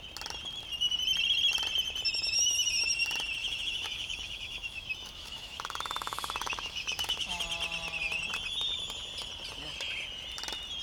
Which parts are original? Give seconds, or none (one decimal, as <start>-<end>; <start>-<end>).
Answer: 0.0-3.4; 7.4-10.8